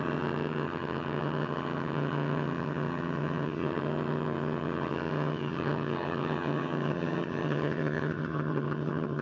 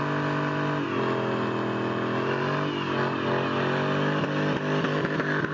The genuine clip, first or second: second